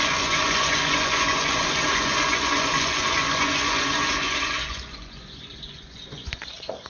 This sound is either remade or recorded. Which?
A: remade